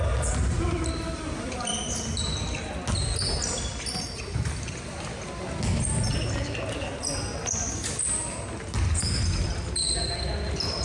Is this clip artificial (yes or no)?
no